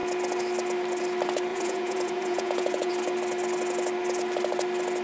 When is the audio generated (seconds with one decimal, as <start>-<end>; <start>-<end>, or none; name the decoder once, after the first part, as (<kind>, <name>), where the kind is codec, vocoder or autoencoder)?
1.5-2.9 (vocoder, Vocos)